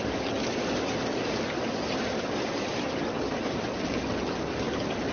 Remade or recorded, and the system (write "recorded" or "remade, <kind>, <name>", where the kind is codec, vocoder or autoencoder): recorded